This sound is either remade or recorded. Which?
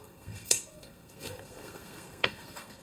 remade